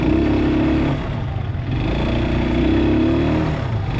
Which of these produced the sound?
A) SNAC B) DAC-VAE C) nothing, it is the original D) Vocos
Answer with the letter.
C